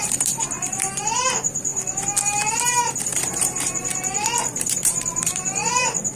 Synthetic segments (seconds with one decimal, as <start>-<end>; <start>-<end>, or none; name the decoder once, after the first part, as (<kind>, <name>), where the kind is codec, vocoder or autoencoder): 0.0-6.2 (vocoder, BigVGAN v2)